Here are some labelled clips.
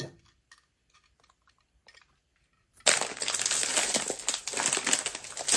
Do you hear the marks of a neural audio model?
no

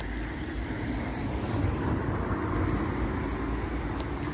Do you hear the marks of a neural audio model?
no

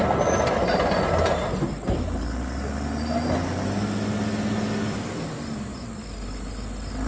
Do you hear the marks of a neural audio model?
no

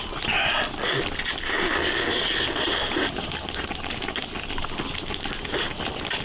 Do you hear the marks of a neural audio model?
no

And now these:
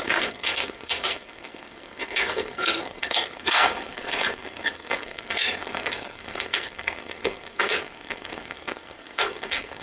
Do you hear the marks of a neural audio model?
yes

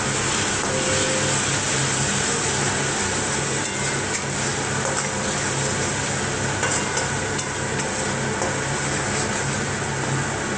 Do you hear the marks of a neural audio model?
no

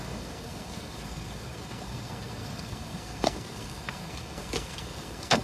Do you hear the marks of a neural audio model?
yes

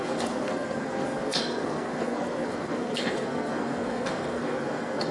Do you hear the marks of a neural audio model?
yes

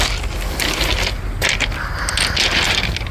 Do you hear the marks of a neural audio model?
no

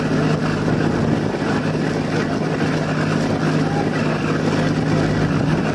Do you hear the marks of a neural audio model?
no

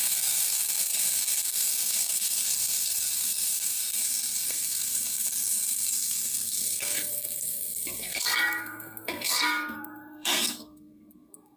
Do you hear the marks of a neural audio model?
yes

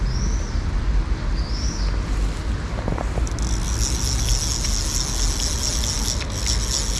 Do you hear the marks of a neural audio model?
no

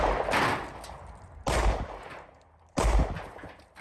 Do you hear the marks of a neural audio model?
no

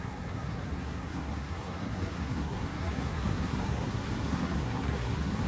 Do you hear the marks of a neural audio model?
yes